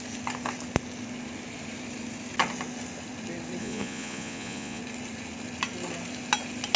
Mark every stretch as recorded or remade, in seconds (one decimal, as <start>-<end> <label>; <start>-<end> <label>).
0.0-3.6 recorded; 3.6-4.8 remade; 4.8-6.8 recorded